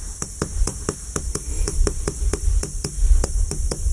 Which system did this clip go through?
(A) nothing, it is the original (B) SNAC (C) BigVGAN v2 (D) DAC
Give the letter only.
A